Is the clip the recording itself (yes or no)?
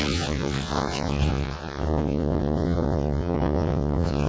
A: no